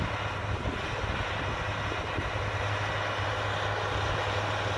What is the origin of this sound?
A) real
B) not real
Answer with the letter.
A